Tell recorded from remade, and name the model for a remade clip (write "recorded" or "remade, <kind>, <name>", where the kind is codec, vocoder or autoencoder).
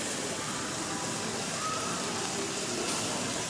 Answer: recorded